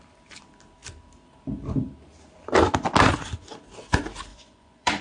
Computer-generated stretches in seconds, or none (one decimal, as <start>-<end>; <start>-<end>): 4.3-5.0